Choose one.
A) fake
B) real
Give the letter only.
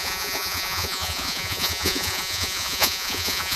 A